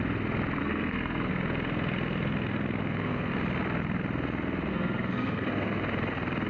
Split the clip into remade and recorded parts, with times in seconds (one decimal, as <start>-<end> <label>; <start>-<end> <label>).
0.0-0.6 recorded; 0.6-1.3 remade; 1.3-2.8 recorded; 2.8-3.3 remade; 3.3-4.7 recorded; 4.7-5.8 remade; 5.8-6.5 recorded